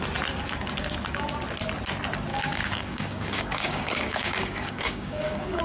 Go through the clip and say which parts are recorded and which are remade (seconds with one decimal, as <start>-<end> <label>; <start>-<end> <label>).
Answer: 0.0-2.3 recorded; 2.3-5.6 remade